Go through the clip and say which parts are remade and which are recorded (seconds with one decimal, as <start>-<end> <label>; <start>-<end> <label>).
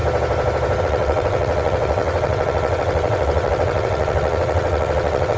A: 0.0-0.8 recorded; 0.8-5.4 remade